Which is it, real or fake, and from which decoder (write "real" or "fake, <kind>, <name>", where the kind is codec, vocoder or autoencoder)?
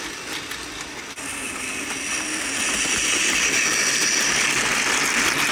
real